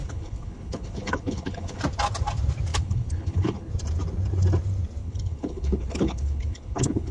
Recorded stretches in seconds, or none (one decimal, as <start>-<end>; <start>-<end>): 1.8-2.7; 3.7-5.0